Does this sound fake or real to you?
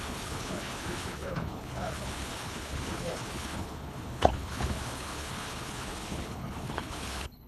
fake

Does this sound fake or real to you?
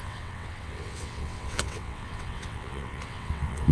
fake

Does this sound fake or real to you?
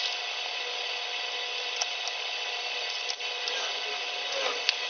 real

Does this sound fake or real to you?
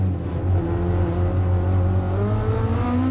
real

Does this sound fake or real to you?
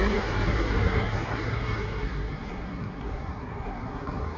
fake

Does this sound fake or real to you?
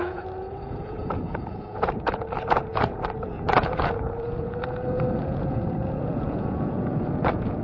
fake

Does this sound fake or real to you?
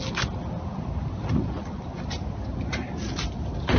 real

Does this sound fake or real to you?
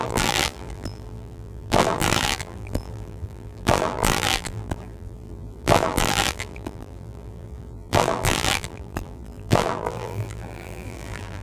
fake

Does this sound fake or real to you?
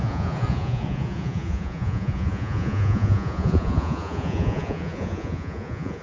fake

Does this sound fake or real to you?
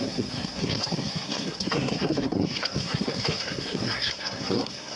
fake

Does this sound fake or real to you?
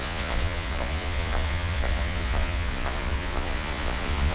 fake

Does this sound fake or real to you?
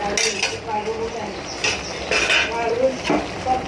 real